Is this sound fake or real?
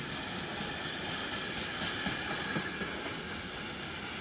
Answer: real